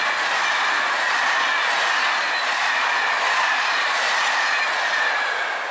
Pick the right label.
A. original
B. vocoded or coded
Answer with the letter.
A